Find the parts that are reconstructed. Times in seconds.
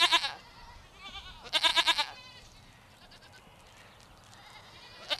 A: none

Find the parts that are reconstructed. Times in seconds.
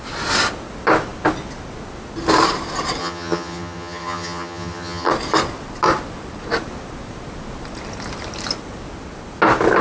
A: 3.0-5.1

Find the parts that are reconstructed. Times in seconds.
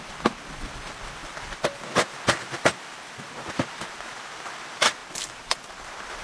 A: 5.0-6.2